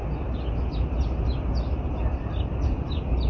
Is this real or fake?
real